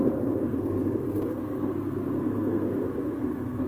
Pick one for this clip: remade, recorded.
remade